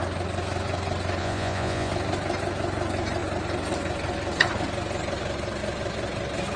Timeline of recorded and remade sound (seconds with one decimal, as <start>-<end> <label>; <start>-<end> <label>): 0.0-1.2 recorded; 1.2-1.9 remade; 1.9-6.6 recorded